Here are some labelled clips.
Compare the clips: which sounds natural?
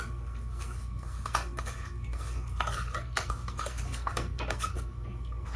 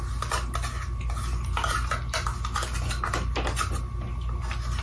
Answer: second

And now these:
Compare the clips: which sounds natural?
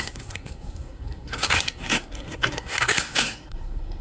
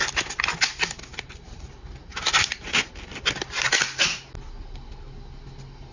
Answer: second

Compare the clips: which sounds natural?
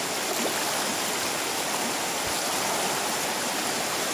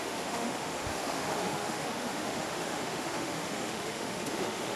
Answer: first